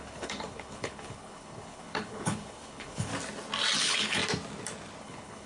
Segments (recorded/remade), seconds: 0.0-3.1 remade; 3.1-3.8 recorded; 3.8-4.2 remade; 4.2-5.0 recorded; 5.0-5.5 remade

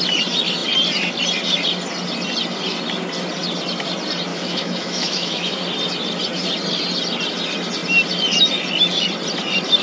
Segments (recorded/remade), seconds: 0.0-4.3 recorded; 4.3-5.6 remade; 5.6-9.8 recorded

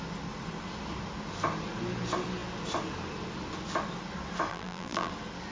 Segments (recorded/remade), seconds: 0.0-4.5 recorded; 4.5-5.1 remade; 5.1-5.5 recorded

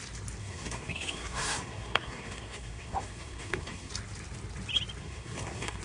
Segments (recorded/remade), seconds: 0.0-0.4 recorded; 0.4-3.9 remade; 3.9-5.0 recorded; 5.0-5.8 remade

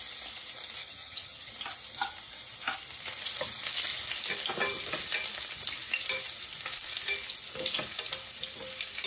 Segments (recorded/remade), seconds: 0.0-0.8 recorded; 0.8-1.5 remade; 1.5-9.1 recorded

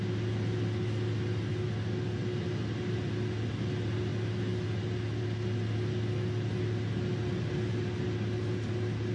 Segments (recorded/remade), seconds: 0.0-9.1 recorded